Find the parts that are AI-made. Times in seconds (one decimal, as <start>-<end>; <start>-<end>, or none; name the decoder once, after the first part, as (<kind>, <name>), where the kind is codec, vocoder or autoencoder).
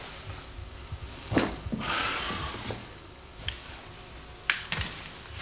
0.6-2.0 (codec, DAC); 2.8-3.8